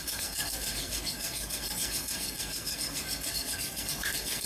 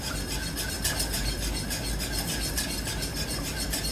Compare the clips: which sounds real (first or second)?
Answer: second